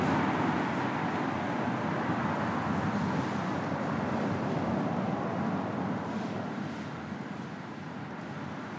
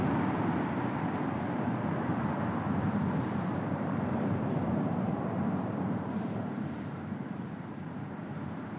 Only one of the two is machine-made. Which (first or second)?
second